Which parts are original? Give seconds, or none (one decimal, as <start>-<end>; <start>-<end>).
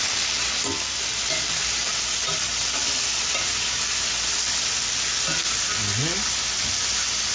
0.0-7.3